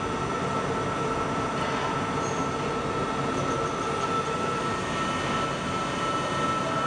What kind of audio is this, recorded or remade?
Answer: recorded